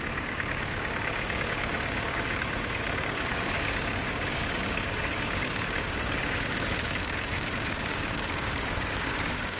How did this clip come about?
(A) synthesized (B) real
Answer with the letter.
A